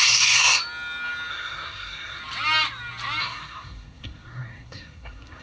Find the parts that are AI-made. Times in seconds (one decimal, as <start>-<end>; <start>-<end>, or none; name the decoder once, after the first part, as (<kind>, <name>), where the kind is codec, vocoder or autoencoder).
0.0-0.6 (codec, SNAC); 1.3-2.2; 3.2-5.4